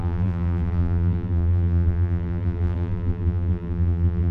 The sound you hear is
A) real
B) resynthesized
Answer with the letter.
B